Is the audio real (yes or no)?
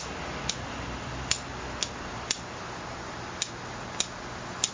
yes